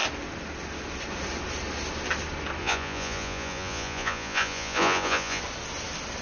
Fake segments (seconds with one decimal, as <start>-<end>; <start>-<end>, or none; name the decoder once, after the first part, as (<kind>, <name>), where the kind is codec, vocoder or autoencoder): 2.6-5.4 (vocoder, Vocos)